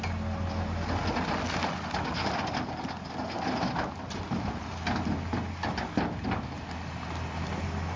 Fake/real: real